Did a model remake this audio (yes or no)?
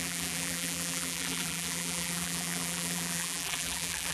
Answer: yes